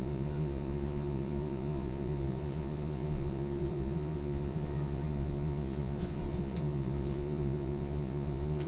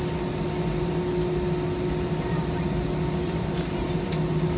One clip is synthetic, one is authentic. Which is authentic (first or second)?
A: second